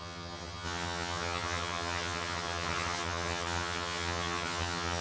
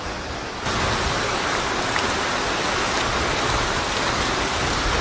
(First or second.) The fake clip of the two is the first